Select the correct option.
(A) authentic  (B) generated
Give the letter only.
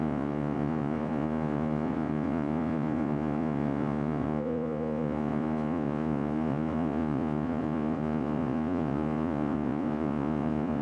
B